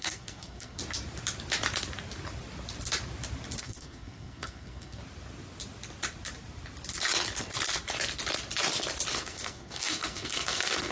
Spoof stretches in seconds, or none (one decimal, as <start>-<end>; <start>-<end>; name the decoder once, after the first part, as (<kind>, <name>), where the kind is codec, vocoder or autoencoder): 0.0-0.8 (codec, SNAC); 3.6-5.0; 9.2-10.9